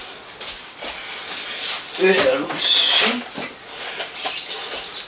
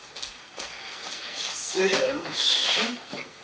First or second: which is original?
first